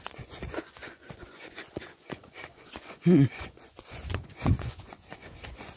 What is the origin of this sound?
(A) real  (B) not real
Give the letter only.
B